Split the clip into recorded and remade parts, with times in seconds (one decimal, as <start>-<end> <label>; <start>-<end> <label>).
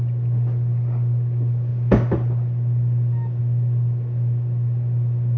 0.0-5.4 recorded